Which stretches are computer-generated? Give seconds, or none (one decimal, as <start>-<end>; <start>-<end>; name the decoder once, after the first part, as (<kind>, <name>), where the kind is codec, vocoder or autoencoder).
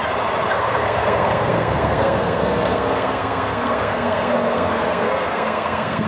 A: 0.5-6.1 (codec, SNAC)